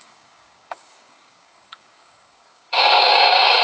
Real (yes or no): no